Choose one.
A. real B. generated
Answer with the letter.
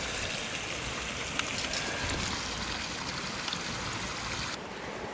A